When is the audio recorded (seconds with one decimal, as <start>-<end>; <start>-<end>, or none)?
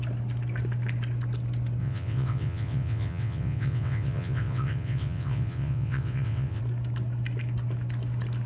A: 0.0-1.8; 6.6-8.5